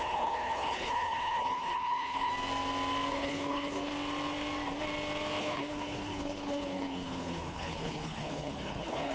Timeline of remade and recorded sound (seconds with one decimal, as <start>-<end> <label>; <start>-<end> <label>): 0.0-2.3 remade; 2.3-3.1 recorded; 3.1-3.9 remade; 3.9-5.4 recorded; 5.4-9.1 remade